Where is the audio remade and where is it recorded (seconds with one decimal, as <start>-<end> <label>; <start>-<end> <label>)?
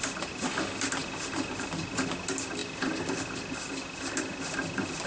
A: 0.0-5.1 recorded